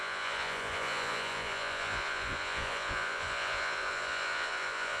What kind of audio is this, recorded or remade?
remade